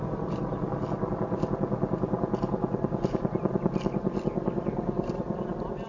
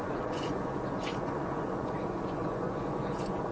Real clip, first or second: first